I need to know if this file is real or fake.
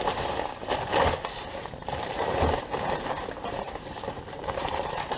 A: fake